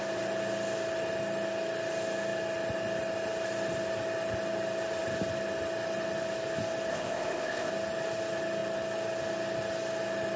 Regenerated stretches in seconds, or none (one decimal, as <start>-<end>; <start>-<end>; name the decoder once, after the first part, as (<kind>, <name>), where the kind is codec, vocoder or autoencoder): 6.9-7.7 (codec, ZipCodec)